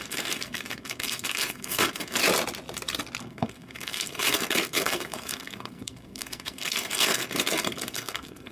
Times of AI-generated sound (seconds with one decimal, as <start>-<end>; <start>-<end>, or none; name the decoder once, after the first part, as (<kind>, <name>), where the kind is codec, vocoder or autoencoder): 0.0-2.2 (codec, SNAC); 3.2-8.5